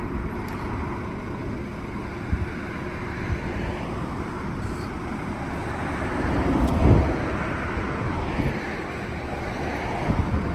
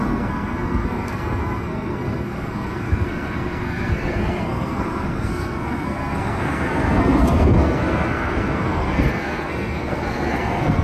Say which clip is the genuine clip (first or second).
first